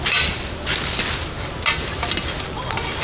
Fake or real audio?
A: real